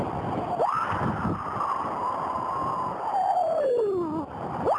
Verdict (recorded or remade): recorded